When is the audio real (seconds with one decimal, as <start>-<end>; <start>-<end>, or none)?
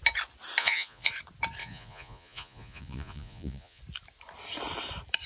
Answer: 0.0-0.6; 1.1-1.6; 3.8-5.3